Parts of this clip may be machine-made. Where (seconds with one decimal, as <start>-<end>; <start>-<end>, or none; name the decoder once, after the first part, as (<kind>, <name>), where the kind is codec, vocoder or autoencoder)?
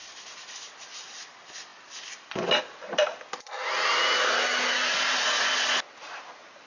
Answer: none